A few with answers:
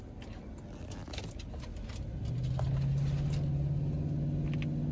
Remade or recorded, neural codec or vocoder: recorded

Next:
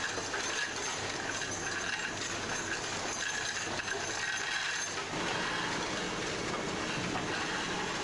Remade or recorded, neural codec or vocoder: recorded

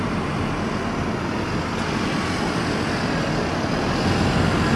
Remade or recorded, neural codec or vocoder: recorded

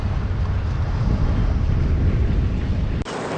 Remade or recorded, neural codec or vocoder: recorded